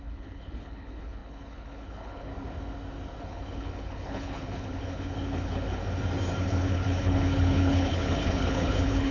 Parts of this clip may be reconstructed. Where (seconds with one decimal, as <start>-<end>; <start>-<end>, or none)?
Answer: 0.0-2.3; 3.2-5.8; 6.4-9.1